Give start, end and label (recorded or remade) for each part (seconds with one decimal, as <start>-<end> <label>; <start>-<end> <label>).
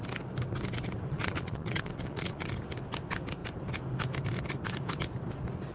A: 0.0-1.1 recorded; 1.1-2.5 remade; 2.5-5.7 recorded